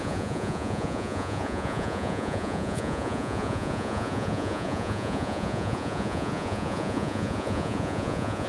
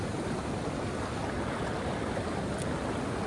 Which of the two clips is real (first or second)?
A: second